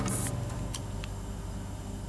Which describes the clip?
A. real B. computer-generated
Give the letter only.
A